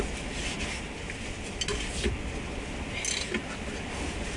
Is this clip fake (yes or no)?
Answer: no